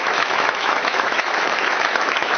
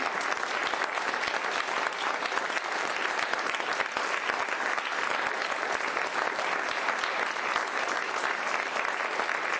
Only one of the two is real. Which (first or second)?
second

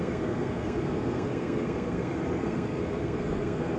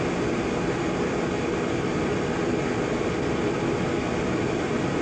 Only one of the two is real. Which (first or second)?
second